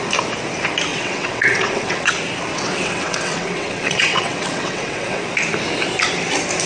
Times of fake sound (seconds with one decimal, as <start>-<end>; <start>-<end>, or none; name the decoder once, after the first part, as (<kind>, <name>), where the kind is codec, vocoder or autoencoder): 0.9-2.1 (vocoder, WaveNeXt); 2.5-5.2